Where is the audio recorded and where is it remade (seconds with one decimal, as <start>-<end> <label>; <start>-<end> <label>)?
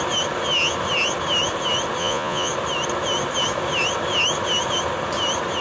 0.0-2.0 recorded; 2.0-2.5 remade; 2.5-5.6 recorded